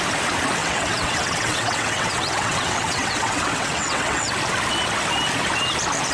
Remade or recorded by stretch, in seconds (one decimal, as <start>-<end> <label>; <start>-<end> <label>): 0.0-0.6 recorded; 0.6-4.3 remade; 4.3-6.1 recorded